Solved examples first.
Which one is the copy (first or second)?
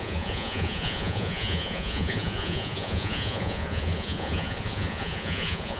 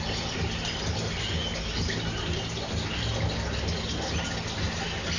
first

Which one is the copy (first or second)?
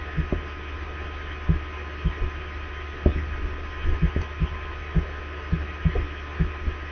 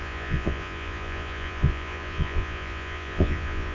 second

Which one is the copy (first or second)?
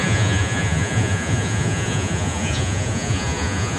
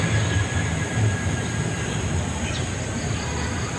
first